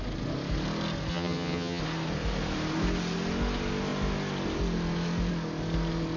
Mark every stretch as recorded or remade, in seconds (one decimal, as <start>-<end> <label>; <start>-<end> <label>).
0.0-1.1 recorded; 1.1-1.8 remade; 1.8-6.2 recorded